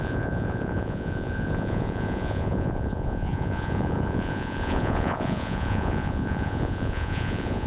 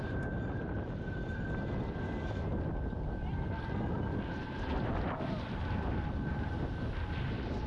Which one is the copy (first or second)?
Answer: first